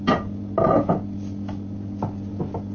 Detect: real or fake real